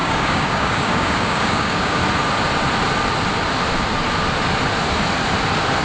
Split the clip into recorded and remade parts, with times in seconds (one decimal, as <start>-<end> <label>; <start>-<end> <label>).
0.0-2.0 remade; 2.0-5.8 recorded